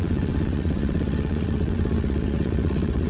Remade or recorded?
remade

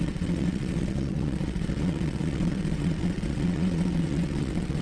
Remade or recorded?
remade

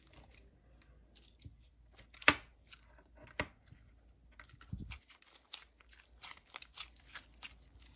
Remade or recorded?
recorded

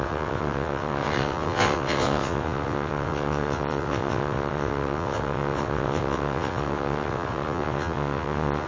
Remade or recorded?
remade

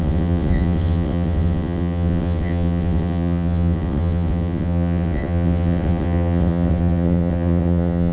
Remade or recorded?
remade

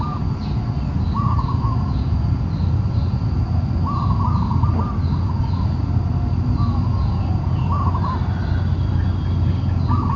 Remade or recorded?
recorded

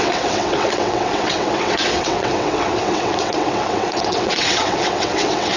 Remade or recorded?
remade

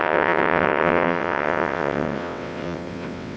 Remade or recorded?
remade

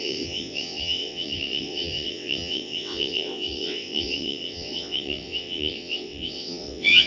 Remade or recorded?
remade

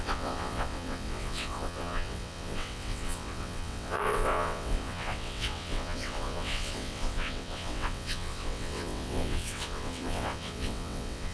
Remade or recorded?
remade